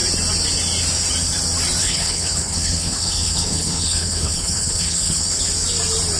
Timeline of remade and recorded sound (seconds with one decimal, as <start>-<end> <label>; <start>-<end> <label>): 0.0-1.8 recorded; 1.8-5.4 remade; 5.4-6.2 recorded